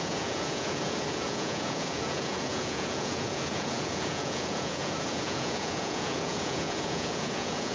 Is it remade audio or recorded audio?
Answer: remade